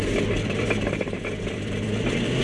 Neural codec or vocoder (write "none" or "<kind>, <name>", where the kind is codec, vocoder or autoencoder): vocoder, BigVGAN v2